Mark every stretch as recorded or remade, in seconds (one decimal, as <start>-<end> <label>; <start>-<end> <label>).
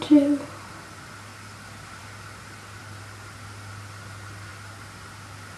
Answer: 0.0-5.6 recorded